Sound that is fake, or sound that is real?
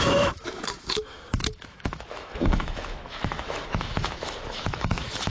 fake